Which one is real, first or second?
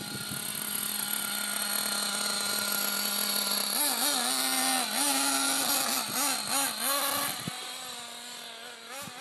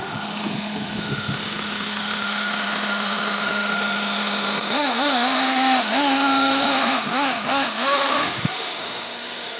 first